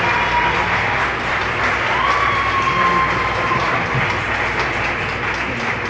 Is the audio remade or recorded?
recorded